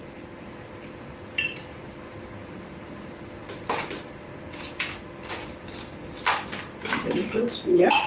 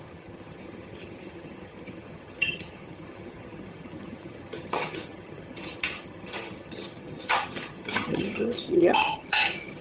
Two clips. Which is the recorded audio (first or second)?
first